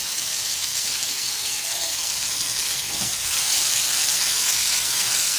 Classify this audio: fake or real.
fake